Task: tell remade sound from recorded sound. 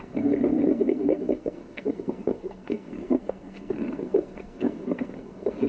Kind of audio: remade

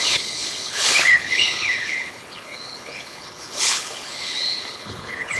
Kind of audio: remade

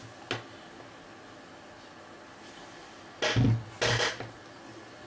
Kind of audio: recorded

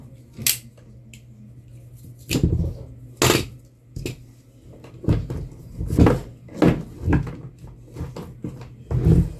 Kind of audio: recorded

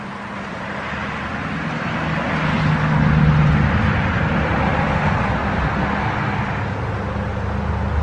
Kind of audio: recorded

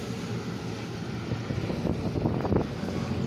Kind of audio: recorded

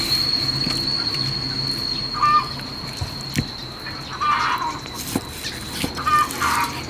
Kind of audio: recorded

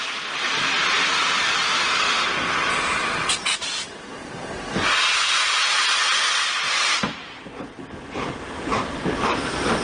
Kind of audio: recorded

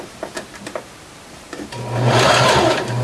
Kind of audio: recorded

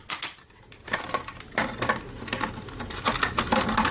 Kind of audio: recorded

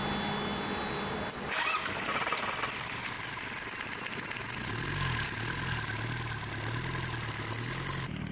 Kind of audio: recorded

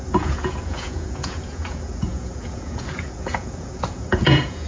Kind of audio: remade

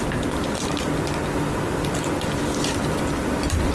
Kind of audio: recorded